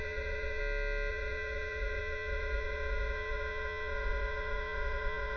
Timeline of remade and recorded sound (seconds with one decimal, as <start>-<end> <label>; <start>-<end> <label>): 0.0-0.6 remade; 0.6-1.1 recorded; 1.1-5.4 remade